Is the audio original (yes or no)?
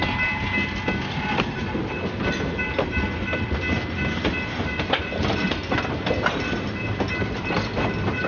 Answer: yes